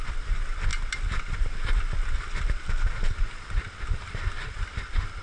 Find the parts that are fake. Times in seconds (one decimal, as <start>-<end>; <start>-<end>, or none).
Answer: none